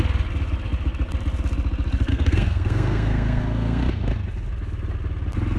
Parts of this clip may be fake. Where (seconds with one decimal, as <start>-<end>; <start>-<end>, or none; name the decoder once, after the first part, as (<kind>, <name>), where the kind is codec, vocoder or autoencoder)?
2.1-4.1 (codec, SNAC)